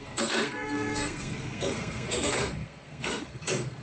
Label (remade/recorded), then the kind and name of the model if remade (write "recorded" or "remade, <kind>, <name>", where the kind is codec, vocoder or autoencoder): remade, codec, SNAC